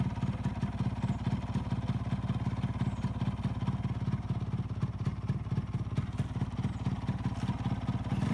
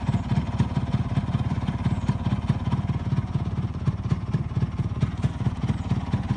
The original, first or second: first